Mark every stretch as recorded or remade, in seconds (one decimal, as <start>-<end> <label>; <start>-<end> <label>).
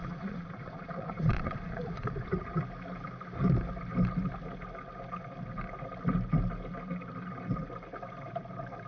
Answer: 0.0-2.6 remade; 2.6-8.9 recorded